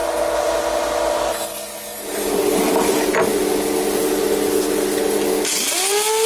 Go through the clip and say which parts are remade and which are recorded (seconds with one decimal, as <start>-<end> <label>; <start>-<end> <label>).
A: 0.0-6.3 recorded